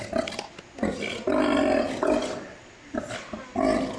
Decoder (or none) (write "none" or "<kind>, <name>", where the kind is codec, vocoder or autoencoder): none